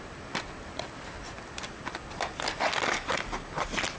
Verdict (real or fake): real